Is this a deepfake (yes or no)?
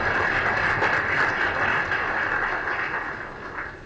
no